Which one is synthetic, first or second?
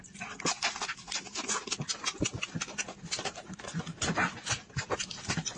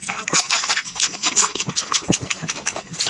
second